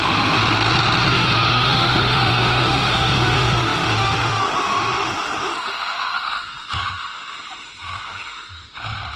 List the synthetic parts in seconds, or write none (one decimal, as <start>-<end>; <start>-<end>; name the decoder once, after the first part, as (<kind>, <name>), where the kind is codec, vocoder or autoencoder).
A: 0.0-0.4 (autoencoder, DAC-VAE); 1.1-9.2